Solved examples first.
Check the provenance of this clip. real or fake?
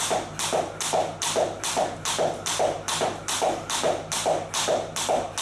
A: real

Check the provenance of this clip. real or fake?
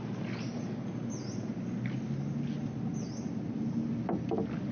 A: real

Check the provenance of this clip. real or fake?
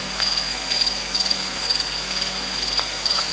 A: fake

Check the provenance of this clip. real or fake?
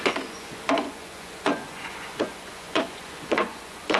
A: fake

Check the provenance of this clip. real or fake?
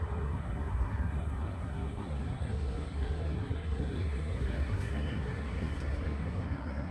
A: fake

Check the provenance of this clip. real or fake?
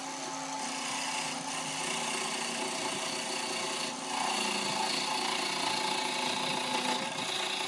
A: real